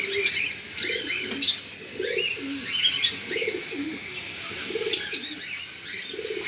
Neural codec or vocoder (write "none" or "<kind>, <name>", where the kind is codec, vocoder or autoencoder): none